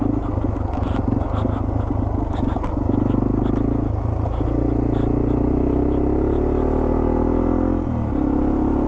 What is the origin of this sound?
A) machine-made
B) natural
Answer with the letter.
B